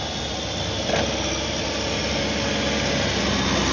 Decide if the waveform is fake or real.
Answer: real